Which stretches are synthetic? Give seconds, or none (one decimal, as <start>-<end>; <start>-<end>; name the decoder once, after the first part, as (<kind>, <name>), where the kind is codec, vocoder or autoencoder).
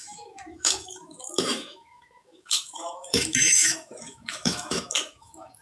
0.0-5.6 (autoencoder, DAC-VAE)